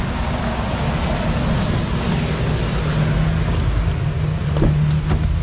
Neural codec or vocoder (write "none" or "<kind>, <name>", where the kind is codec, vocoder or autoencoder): none